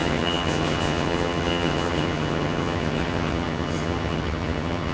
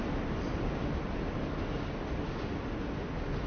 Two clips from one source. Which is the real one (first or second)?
second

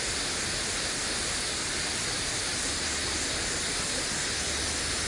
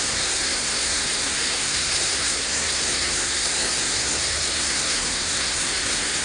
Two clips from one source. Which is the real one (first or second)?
first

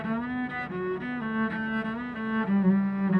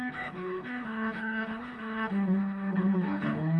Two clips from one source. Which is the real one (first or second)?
first